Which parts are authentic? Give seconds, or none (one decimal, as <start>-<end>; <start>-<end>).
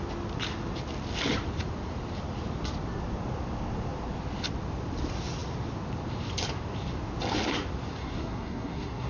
0.0-8.0